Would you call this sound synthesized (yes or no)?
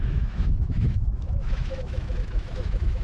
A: yes